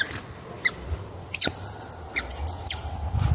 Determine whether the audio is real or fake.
real